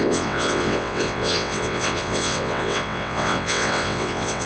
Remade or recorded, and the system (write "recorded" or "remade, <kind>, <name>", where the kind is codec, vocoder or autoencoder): remade, vocoder, WaveNeXt